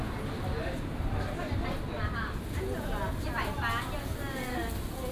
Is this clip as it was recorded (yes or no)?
yes